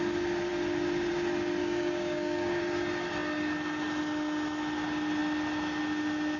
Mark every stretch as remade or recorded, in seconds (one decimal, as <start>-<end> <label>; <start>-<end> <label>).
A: 0.0-1.6 recorded; 1.6-2.6 remade; 2.6-6.4 recorded